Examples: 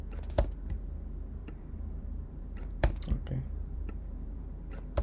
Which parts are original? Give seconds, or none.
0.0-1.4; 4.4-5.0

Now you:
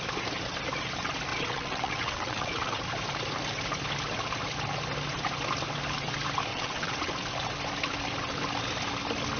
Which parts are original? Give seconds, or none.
0.0-1.3; 2.8-6.5; 7.1-9.4